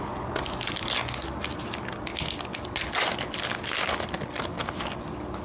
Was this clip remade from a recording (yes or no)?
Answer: no